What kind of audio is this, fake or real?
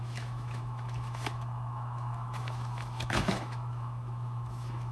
fake